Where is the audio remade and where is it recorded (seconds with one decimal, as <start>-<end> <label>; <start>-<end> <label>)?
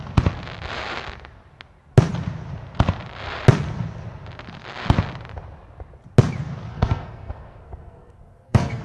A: 0.0-6.7 recorded; 6.7-8.8 remade